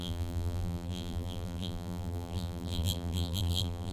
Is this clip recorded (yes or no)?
no